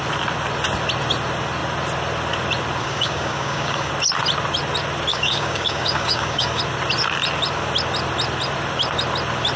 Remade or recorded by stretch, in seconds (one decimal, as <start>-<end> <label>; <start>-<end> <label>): 0.0-2.8 recorded; 2.8-3.9 remade; 3.9-5.1 recorded; 5.1-6.6 remade; 6.6-9.6 recorded